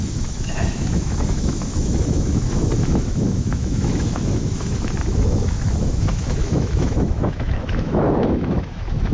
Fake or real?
fake